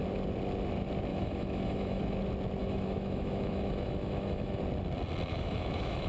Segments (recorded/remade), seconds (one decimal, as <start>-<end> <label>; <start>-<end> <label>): 0.0-1.1 recorded; 1.1-2.0 remade; 2.0-2.6 recorded; 2.6-4.6 remade; 4.6-5.3 recorded; 5.3-6.1 remade